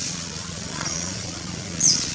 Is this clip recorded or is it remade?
remade